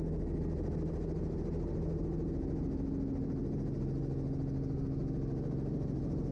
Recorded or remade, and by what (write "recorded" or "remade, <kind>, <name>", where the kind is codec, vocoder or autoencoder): recorded